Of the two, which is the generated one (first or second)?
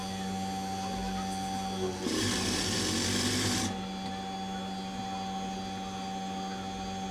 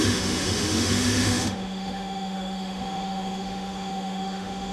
second